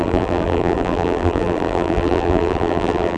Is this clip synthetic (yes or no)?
yes